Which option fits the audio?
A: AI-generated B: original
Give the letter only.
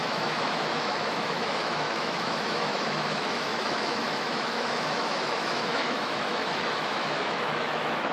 A